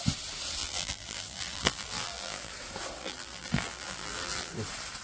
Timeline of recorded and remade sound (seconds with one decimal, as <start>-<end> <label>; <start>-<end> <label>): 0.0-0.6 recorded; 0.6-2.5 remade; 2.5-3.0 recorded; 3.0-4.5 remade; 4.5-5.0 recorded

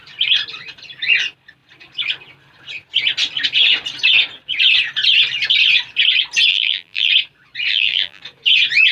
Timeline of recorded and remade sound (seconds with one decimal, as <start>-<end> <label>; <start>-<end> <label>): 0.0-6.5 recorded; 6.5-7.1 remade; 7.1-7.7 recorded; 7.7-8.2 remade; 8.2-8.9 recorded

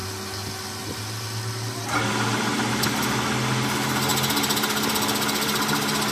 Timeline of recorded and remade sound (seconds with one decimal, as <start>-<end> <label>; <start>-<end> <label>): 0.0-6.1 recorded

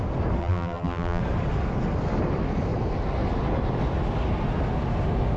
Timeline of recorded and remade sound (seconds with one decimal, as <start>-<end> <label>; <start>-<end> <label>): 0.0-0.4 recorded; 0.4-1.2 remade; 1.2-5.4 recorded

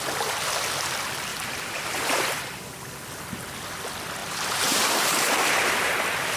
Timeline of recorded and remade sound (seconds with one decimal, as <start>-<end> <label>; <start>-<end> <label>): 0.0-1.3 recorded; 1.3-2.0 remade; 2.0-4.2 recorded; 4.2-5.9 remade; 5.9-6.4 recorded